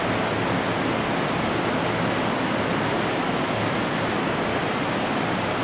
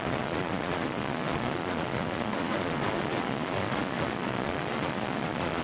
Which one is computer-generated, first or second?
second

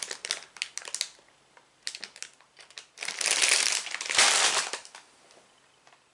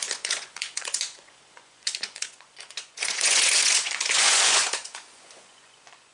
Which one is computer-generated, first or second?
second